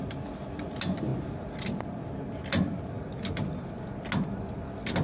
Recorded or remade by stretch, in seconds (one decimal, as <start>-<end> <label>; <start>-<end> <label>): 0.0-5.0 recorded